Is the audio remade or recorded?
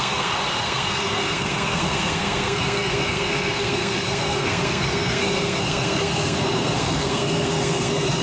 remade